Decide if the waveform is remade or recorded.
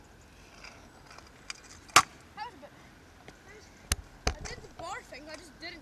recorded